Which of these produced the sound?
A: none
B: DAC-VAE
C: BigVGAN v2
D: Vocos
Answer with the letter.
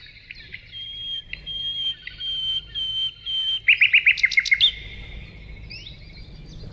A